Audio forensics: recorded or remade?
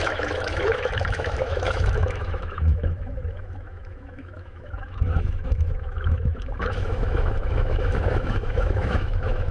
remade